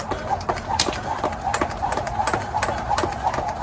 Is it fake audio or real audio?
real